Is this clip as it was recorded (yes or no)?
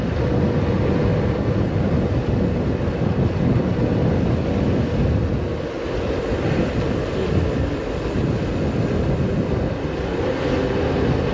yes